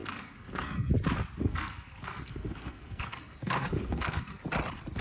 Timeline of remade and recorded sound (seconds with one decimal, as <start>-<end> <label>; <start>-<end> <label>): 0.0-0.9 remade; 0.9-1.4 recorded; 1.4-4.4 remade; 4.4-5.0 recorded